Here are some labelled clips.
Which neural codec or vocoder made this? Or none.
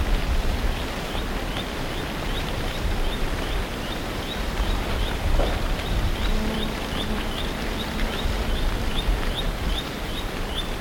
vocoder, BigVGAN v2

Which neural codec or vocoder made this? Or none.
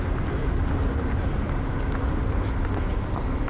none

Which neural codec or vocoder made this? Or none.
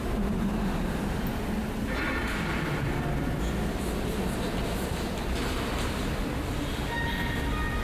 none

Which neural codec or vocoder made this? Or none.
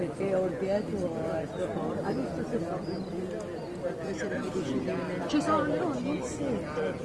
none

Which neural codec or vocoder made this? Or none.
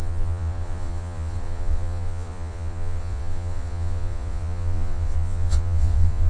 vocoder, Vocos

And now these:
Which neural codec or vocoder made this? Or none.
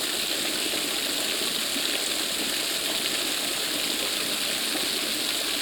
none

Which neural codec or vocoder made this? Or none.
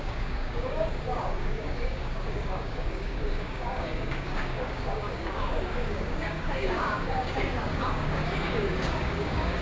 codec, DAC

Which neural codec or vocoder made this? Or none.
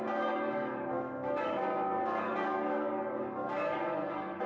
codec, DAC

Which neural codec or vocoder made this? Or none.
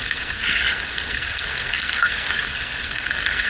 codec, SNAC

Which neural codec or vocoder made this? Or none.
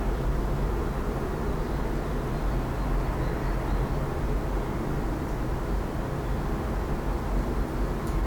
none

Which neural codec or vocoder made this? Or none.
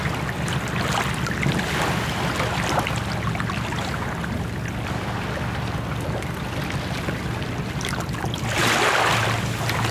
none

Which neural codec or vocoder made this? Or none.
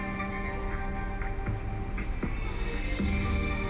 none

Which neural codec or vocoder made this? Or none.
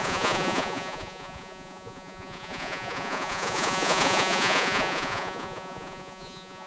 vocoder, Vocos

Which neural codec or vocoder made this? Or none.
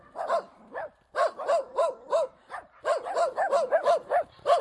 none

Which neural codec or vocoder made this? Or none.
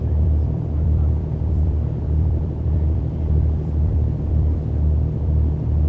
vocoder, BigVGAN v2